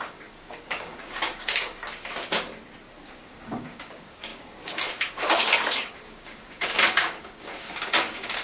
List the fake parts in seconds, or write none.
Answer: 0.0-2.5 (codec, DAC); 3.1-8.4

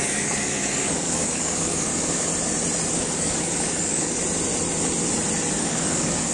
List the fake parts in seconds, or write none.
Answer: 0.0-2.3 (codec, DAC); 2.9-4.2; 5.6-6.3

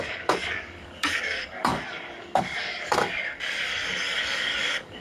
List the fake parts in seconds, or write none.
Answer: 0.0-5.0 (codec, DAC)

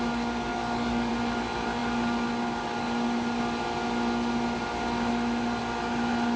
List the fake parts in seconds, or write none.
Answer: 0.5-1.1 (codec, DAC)

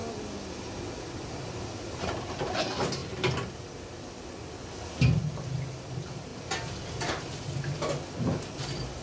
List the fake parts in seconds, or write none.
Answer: none